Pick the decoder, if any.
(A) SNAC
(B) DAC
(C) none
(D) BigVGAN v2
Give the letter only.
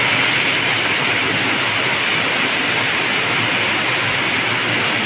C